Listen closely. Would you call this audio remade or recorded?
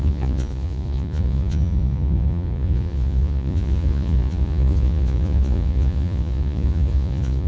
remade